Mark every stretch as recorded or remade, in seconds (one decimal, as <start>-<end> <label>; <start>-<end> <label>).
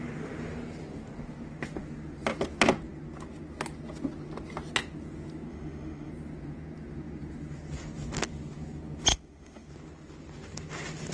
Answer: 0.0-5.5 recorded; 5.5-6.1 remade; 6.1-9.1 recorded; 9.1-9.7 remade; 9.7-11.1 recorded